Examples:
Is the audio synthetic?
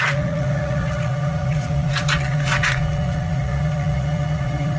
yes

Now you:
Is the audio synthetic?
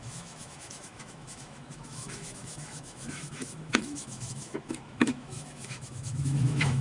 yes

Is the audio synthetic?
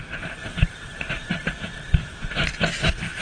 no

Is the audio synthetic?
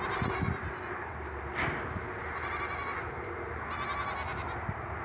no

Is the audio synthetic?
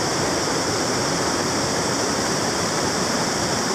yes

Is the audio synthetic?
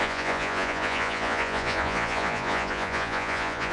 yes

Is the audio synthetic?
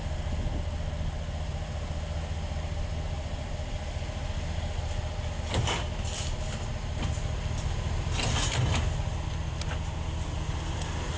no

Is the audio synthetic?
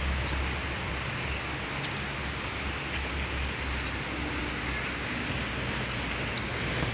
no